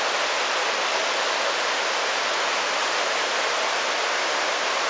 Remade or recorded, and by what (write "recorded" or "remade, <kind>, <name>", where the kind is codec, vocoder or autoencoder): recorded